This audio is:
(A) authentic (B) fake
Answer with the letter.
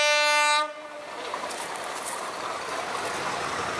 A